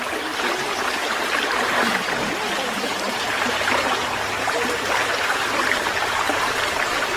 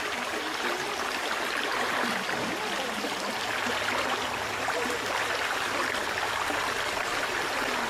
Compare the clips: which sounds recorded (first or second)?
second